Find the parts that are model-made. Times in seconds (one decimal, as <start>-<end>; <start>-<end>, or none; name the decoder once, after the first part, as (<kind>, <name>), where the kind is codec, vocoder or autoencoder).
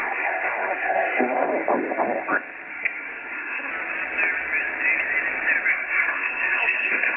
0.0-1.5 (codec, SNAC); 2.7-3.7; 5.7-7.2